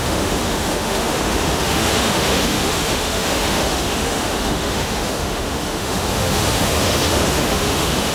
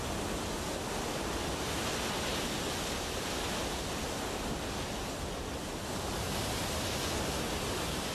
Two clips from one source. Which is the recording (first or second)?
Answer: second